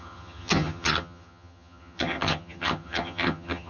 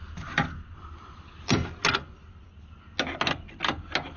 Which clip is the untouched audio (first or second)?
second